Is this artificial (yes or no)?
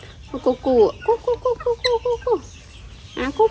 no